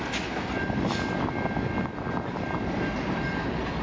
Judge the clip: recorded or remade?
recorded